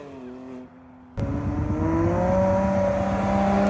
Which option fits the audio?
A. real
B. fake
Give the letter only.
A